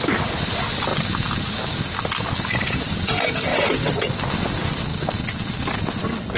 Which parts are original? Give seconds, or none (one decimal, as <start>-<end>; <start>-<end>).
0.0-2.6; 3.1-3.5; 4.2-6.4